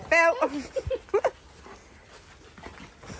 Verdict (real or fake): real